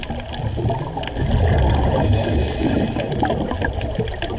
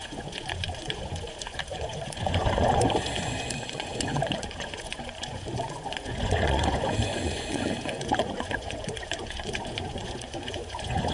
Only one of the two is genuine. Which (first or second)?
first